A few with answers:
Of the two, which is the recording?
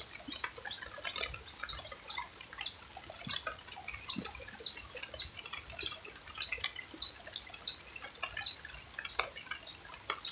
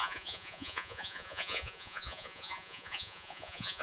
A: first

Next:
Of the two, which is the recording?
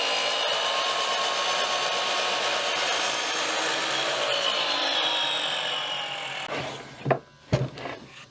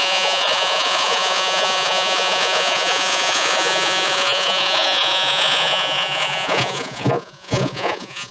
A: first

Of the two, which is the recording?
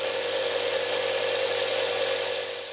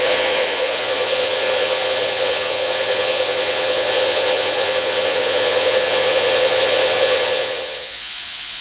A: first